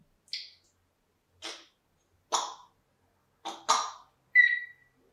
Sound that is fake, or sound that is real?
real